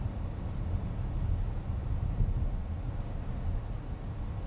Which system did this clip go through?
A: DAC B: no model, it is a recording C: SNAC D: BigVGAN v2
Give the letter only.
B